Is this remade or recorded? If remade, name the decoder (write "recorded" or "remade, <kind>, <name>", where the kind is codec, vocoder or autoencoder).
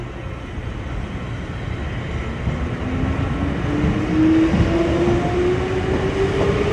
recorded